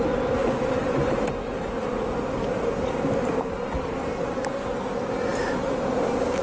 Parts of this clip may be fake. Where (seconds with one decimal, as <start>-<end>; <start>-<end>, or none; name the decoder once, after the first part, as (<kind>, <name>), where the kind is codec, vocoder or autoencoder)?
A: none